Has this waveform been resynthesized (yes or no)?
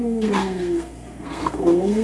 yes